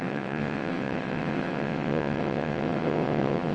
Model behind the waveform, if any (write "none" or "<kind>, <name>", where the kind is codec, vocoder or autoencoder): vocoder, WaveNeXt